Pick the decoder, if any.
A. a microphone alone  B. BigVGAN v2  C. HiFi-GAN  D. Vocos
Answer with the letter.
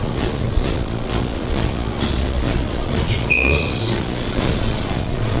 D